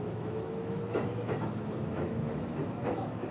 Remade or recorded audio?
remade